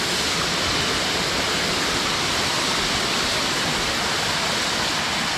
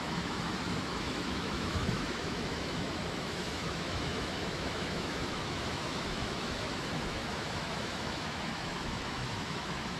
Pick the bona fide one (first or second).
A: first